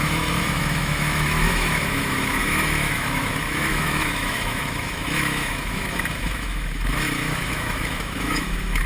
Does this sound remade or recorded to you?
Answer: remade